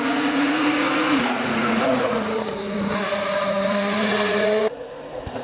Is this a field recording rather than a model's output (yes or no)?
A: no